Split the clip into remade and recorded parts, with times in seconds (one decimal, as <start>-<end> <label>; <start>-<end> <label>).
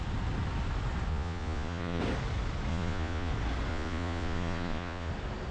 0.0-1.1 recorded; 1.1-2.0 remade; 2.0-2.7 recorded; 2.7-3.3 remade; 3.3-3.7 recorded; 3.7-5.1 remade; 5.1-5.5 recorded